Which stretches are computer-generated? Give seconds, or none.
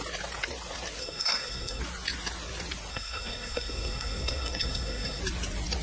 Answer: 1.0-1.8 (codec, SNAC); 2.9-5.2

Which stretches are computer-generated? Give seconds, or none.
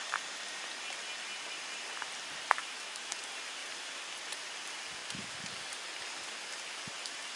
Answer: 2.6-3.1 (autoencoder, DAC-VAE)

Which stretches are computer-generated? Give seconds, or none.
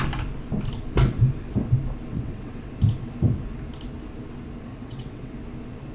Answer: 2.1-2.7 (vocoder, WaveNeXt); 4.7-5.4